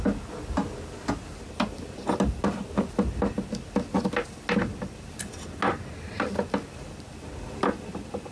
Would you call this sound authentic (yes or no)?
yes